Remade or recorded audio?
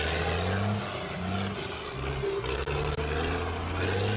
recorded